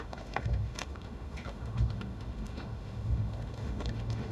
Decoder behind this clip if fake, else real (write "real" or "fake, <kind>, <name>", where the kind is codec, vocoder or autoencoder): fake, autoencoder, DAC-VAE